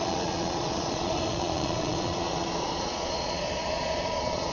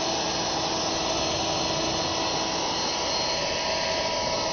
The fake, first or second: first